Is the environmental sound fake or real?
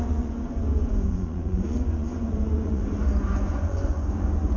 fake